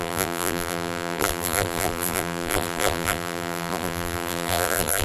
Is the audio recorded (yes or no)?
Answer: no